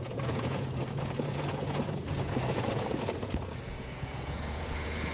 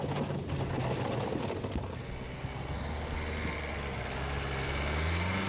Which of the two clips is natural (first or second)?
second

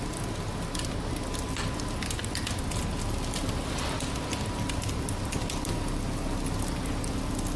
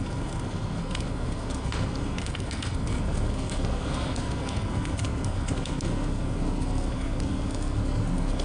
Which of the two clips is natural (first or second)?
first